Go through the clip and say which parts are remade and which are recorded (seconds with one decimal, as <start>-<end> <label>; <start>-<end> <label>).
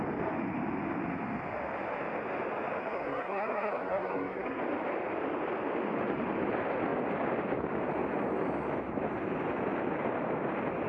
0.0-2.8 recorded; 2.8-4.6 remade; 4.6-10.9 recorded